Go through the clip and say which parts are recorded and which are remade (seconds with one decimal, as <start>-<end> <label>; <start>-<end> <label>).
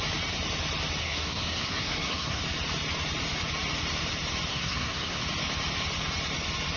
0.0-1.0 recorded; 1.0-2.4 remade; 2.4-4.5 recorded; 4.5-5.2 remade; 5.2-6.8 recorded